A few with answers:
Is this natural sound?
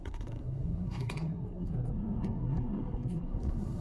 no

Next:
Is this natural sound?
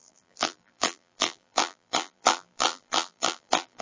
no